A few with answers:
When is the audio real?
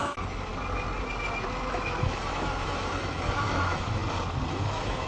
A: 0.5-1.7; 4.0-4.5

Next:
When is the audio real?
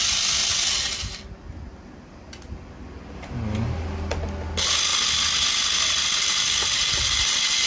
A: 0.0-7.7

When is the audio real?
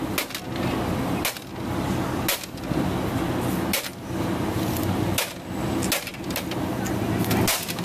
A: 0.0-7.8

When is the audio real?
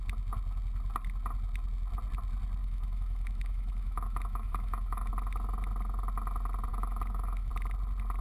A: 0.0-2.6; 5.1-6.7; 7.5-8.2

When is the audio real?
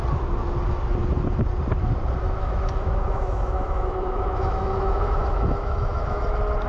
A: 0.0-2.2; 6.2-6.7